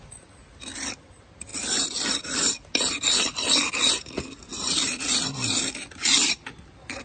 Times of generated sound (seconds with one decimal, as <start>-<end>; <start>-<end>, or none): none